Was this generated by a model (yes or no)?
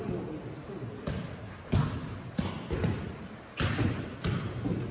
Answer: no